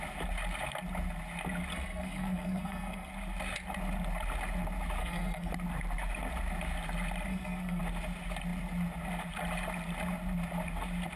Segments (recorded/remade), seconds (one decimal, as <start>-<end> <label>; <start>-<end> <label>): 0.0-1.7 recorded; 1.7-3.1 remade; 3.1-5.0 recorded; 5.0-5.5 remade; 5.5-7.3 recorded; 7.3-7.8 remade; 7.8-11.2 recorded